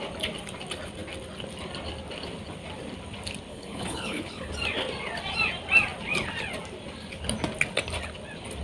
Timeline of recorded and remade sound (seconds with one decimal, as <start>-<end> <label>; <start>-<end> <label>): 0.0-3.5 recorded; 3.5-4.5 remade; 4.5-8.6 recorded